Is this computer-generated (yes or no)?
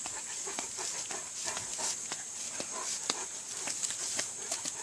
no